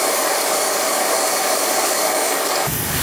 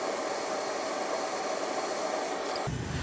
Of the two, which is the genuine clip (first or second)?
second